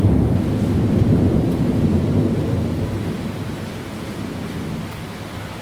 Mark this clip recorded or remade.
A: recorded